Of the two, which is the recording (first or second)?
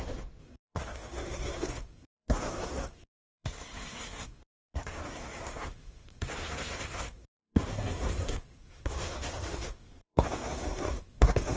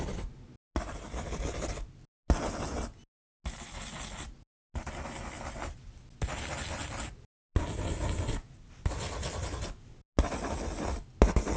second